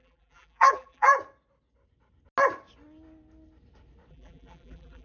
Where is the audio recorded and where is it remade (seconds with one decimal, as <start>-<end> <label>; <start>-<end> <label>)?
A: 0.0-1.1 remade; 1.1-4.1 recorded; 4.1-5.0 remade